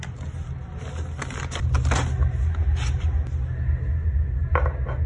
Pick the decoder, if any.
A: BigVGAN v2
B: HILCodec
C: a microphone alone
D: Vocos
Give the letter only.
C